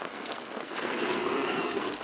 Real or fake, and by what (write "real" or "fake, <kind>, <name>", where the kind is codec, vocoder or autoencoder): fake, codec, SNAC